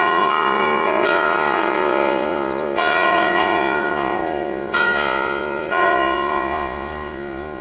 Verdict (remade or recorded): remade